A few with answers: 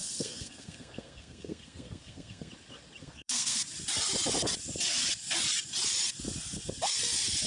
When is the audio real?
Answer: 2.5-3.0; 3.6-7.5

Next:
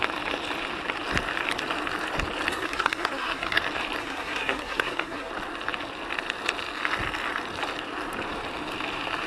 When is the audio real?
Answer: 0.0-2.5; 3.6-4.0; 5.3-9.3

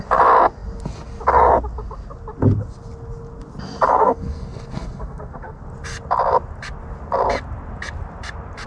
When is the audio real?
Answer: 0.0-3.9; 5.6-8.7

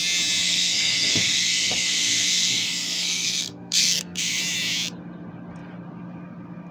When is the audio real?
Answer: 0.0-0.4; 4.4-6.7

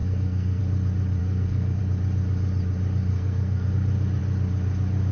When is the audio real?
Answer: 0.6-1.2; 1.8-3.1; 3.7-5.1

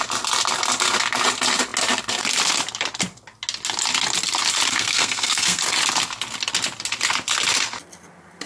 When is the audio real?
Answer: 0.0-4.7; 5.6-8.5